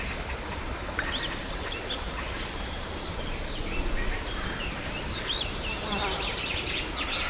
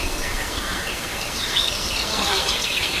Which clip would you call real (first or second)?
first